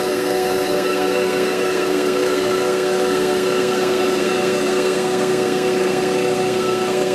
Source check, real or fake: fake